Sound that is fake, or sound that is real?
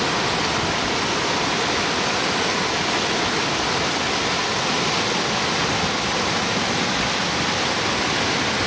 real